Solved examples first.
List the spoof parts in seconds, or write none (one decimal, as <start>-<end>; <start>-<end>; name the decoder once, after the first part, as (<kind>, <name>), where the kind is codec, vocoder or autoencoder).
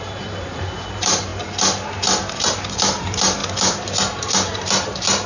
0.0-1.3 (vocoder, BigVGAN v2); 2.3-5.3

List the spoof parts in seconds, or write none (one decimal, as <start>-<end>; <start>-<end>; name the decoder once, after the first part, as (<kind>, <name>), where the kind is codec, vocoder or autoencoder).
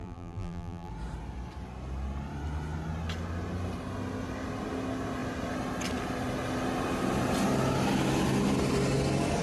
0.0-0.9 (vocoder, BigVGAN v2)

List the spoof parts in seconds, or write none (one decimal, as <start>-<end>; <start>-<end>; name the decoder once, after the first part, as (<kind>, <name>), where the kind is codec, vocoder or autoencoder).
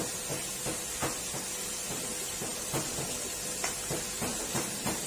none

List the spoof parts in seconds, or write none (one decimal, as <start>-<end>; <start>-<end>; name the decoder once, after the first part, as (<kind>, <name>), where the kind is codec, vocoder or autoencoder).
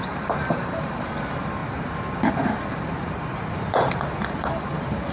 0.0-1.6 (vocoder, BigVGAN v2); 3.7-5.1